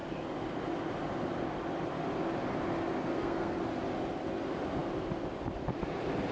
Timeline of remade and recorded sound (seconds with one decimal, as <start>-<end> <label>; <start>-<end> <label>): 0.0-3.1 recorded; 3.1-3.6 remade; 3.6-6.3 recorded